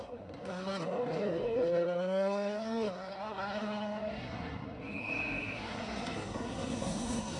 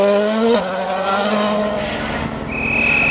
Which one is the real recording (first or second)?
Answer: second